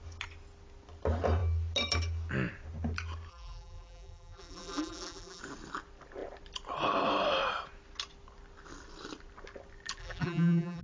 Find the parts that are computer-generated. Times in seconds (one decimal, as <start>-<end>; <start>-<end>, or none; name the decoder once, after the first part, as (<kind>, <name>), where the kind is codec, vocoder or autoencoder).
3.3-5.4 (vocoder, BigVGAN v2); 10.0-10.8